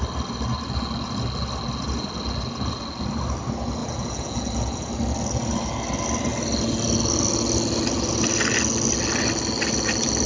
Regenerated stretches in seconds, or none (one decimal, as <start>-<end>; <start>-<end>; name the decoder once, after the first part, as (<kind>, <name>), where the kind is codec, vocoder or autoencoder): 3.8-4.9 (vocoder, Vocos)